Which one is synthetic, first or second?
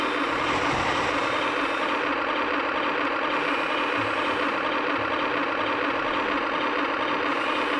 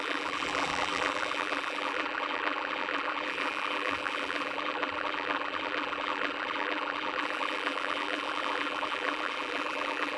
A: second